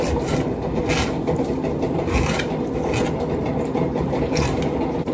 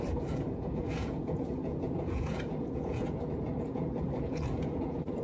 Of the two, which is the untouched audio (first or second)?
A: first